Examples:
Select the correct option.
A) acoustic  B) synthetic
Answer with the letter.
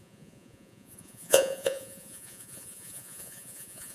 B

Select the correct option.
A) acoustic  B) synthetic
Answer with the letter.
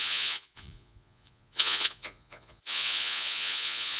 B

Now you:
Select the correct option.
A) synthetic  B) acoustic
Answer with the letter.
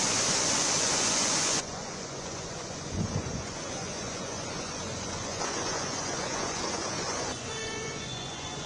A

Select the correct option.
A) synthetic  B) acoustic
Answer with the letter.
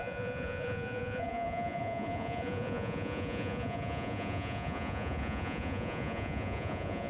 A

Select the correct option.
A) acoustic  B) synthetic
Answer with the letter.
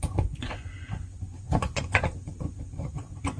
B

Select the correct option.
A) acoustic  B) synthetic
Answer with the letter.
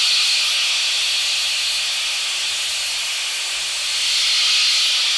A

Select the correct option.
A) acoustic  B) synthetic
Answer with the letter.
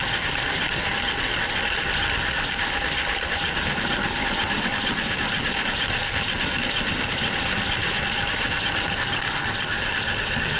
A